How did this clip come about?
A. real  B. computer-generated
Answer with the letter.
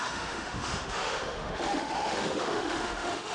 B